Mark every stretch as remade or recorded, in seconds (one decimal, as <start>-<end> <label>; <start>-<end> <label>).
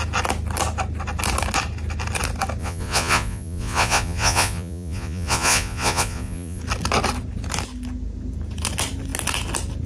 0.0-2.6 recorded; 2.6-6.6 remade; 6.6-9.9 recorded